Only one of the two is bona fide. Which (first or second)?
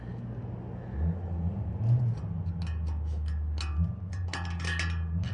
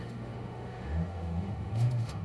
first